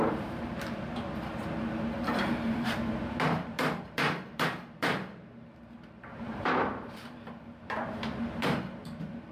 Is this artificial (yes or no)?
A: yes